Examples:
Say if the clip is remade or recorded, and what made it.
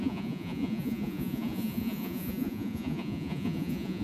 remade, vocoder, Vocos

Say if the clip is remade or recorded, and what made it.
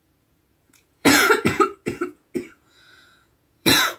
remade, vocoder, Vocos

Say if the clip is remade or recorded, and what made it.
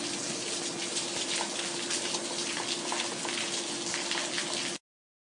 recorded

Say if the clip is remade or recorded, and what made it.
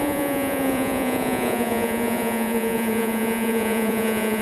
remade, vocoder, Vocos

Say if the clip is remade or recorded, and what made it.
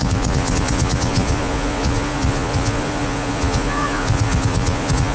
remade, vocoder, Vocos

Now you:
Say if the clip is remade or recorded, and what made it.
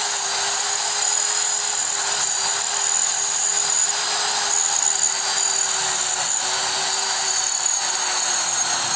recorded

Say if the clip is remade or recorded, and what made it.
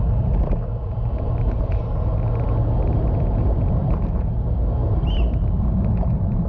recorded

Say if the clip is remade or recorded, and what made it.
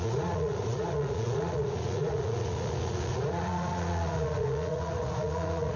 remade, vocoder, Vocos